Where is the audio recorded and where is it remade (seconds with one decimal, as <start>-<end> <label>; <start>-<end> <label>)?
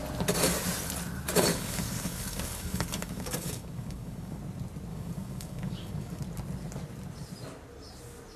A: 0.0-1.5 recorded; 1.5-4.4 remade; 4.4-4.9 recorded; 4.9-6.2 remade; 6.2-8.4 recorded